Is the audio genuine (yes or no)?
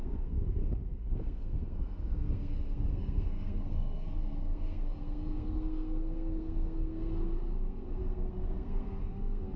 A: no